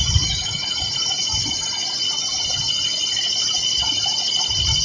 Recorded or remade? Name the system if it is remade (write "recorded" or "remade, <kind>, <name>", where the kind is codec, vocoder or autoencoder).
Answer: recorded